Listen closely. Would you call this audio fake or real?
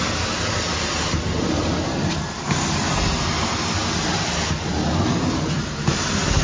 real